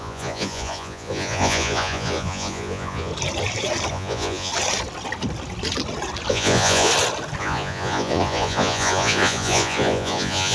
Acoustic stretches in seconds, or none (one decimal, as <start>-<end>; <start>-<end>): 3.1-3.9; 4.5-6.3; 6.9-7.4